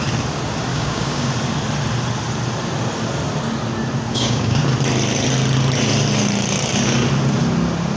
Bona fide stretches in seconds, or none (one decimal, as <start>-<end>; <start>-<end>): 0.0-0.7; 1.3-4.1; 4.6-8.0